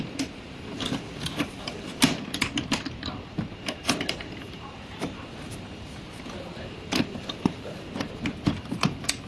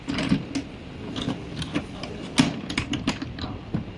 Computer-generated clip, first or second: first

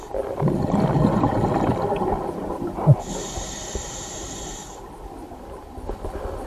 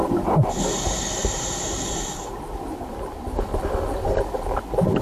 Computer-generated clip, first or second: first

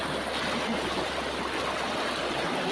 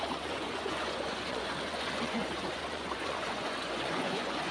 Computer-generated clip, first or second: second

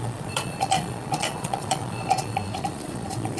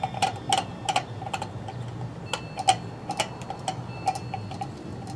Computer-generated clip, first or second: first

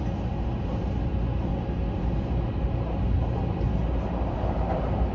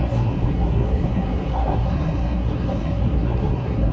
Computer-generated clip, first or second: second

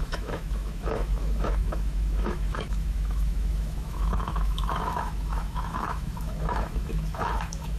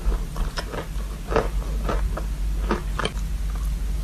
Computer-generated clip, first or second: first